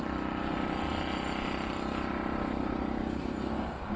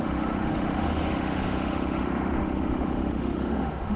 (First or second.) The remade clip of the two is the second